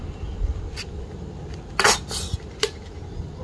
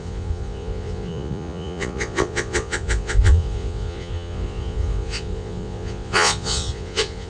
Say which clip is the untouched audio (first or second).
first